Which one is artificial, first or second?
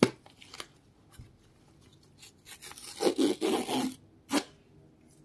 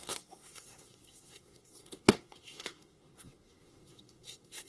second